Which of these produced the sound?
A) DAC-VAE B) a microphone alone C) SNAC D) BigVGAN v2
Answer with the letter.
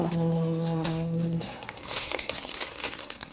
C